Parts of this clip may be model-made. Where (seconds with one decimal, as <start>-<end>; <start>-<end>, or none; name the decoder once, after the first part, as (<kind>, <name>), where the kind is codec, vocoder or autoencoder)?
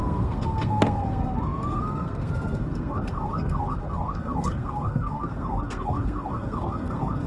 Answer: 0.0-7.3 (codec, SNAC)